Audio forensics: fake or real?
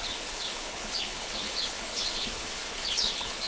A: fake